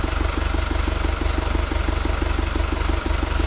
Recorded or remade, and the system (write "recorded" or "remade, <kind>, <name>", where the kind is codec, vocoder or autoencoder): recorded